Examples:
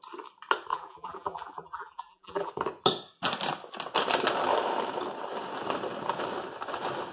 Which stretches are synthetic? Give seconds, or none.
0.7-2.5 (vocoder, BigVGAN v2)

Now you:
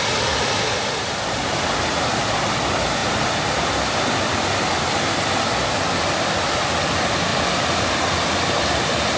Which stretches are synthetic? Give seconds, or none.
3.0-5.1 (vocoder, BigVGAN v2); 7.3-9.2